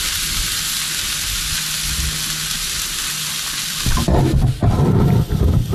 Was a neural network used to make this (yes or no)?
no